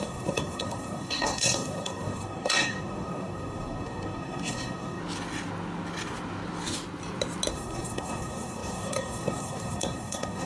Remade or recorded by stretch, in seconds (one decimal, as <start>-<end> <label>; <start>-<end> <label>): 0.0-5.0 remade; 5.0-7.5 recorded; 7.5-10.5 remade